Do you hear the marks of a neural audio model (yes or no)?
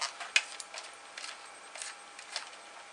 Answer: no